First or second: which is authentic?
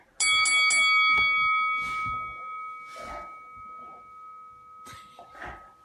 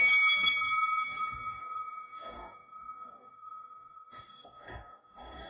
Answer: first